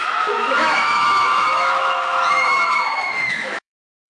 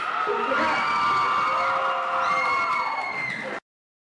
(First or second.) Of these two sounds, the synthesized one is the first